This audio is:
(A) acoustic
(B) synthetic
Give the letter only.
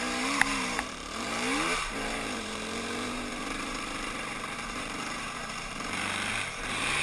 B